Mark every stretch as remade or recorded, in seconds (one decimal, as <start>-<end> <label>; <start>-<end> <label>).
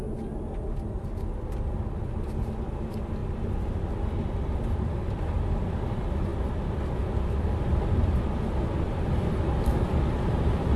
0.0-10.8 recorded